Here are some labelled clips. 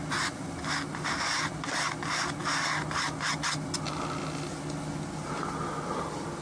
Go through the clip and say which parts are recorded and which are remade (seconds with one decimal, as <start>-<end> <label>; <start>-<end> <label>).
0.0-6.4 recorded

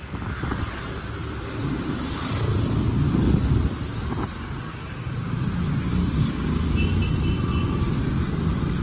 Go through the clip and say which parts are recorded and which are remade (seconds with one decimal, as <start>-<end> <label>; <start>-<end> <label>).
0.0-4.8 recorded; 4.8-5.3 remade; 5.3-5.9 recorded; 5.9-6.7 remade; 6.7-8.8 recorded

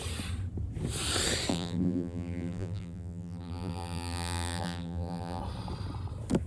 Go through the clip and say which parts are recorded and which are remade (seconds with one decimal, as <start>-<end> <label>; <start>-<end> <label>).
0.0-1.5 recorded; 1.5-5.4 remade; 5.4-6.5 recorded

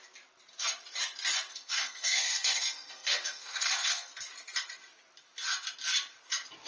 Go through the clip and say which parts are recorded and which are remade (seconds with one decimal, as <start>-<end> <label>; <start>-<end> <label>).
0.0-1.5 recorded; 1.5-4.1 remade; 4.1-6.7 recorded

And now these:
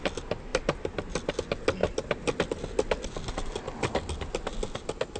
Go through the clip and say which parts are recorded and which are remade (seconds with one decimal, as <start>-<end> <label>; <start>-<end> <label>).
0.0-0.5 recorded; 0.5-1.3 remade; 1.3-1.8 recorded; 1.8-3.3 remade; 3.3-5.2 recorded